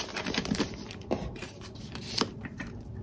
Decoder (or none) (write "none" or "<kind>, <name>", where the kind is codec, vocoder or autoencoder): vocoder, BigVGAN v2